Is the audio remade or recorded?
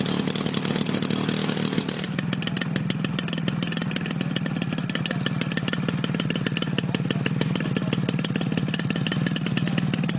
recorded